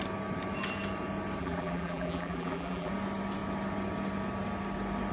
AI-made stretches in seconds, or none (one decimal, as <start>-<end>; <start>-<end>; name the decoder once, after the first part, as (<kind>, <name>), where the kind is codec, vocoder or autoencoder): 1.4-2.9 (vocoder, BigVGAN v2)